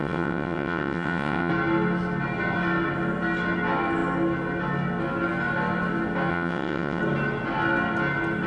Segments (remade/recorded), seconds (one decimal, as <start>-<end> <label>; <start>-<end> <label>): 0.0-1.5 remade; 1.5-6.3 recorded; 6.3-7.0 remade; 7.0-8.5 recorded